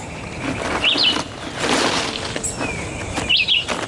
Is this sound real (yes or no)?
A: yes